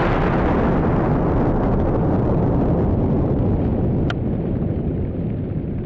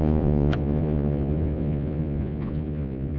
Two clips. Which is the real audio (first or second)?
first